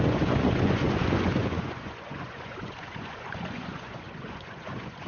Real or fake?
fake